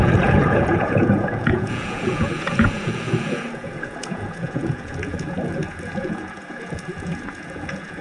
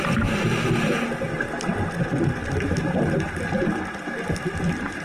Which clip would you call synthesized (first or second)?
first